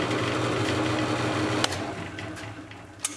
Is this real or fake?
real